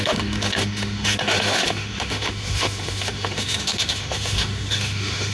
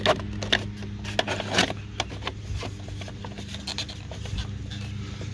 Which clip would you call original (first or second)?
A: second